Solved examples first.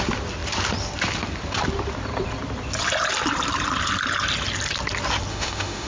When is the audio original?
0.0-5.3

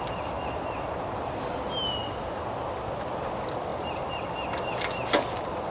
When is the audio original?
0.0-3.7; 4.3-5.7

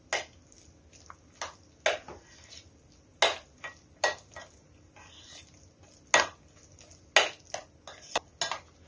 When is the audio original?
0.0-8.9

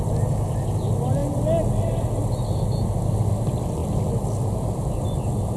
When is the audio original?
0.0-5.6

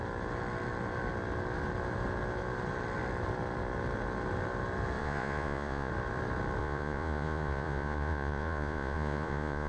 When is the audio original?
0.0-5.0; 5.9-6.6

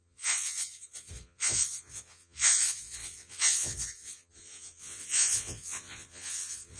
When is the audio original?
none